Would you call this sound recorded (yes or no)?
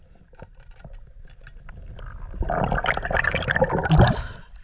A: yes